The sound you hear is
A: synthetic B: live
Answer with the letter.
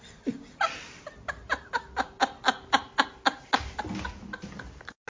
B